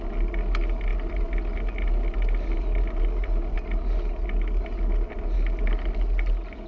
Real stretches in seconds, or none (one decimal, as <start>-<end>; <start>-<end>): 0.0-6.7